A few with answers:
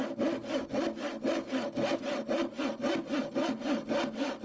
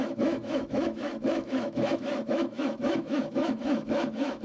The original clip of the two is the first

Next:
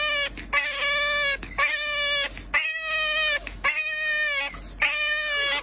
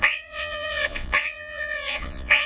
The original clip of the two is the first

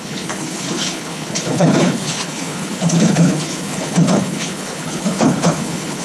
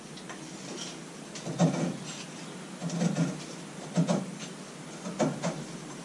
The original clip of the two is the second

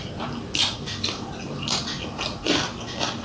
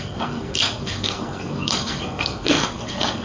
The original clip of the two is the first